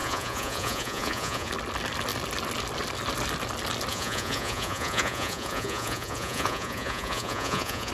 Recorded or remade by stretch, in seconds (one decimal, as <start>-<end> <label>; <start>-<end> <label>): 0.0-1.5 remade; 1.5-3.9 recorded; 3.9-7.9 remade